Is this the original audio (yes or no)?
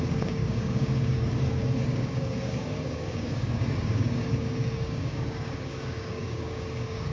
no